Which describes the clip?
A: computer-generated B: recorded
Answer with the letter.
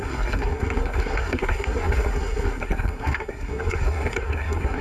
A